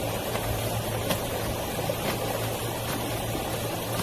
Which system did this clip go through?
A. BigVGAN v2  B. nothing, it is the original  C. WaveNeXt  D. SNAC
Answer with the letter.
B